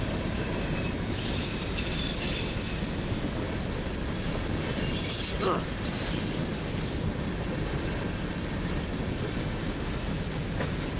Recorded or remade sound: recorded